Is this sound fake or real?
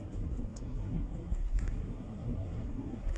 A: fake